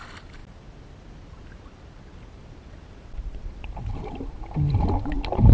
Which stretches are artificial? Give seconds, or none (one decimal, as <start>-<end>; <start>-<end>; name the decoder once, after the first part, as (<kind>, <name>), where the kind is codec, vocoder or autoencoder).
none